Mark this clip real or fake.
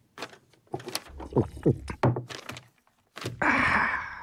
real